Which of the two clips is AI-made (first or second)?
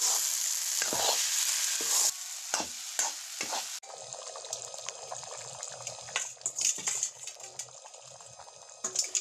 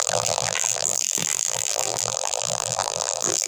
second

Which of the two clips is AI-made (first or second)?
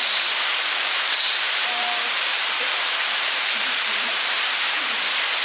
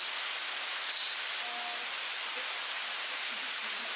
first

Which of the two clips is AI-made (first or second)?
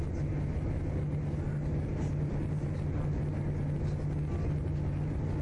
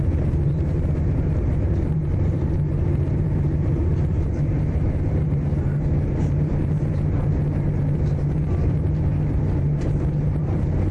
second